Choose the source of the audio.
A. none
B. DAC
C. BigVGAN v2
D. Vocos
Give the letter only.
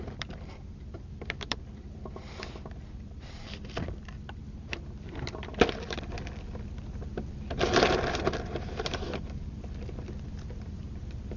C